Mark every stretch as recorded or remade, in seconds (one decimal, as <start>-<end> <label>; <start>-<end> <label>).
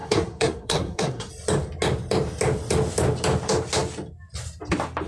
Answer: 0.0-1.3 remade; 1.3-5.1 recorded